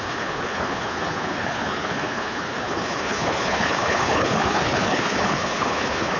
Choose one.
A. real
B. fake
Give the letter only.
B